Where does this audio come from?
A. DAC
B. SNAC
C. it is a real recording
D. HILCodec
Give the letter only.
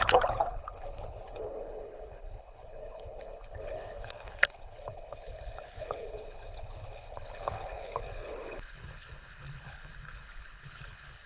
D